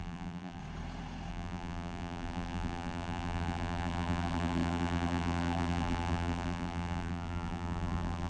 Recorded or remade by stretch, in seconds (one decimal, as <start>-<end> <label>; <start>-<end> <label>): 0.0-0.6 remade; 0.6-1.3 recorded; 1.3-8.3 remade

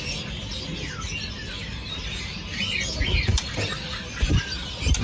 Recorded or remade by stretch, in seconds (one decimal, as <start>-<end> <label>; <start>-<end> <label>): 0.0-3.3 recorded; 3.3-4.3 remade; 4.3-5.0 recorded